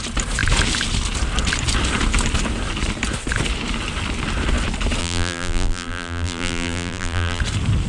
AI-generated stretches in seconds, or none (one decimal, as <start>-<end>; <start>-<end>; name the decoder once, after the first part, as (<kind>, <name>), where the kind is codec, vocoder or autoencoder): 5.0-7.4 (vocoder, BigVGAN v2)